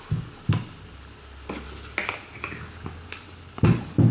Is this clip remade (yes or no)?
no